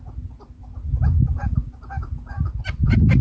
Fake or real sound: real